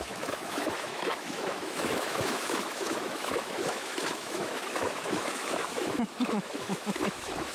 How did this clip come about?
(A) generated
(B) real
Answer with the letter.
A